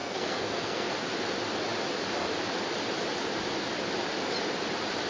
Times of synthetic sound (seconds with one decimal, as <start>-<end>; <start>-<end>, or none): 0.0-0.9